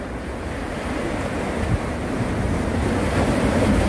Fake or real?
real